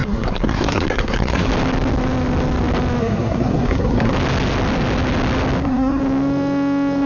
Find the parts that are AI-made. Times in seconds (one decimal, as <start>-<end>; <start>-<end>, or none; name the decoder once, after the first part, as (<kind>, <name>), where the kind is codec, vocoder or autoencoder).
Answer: 0.0-1.5 (codec, SNAC); 3.0-4.1; 5.6-6.0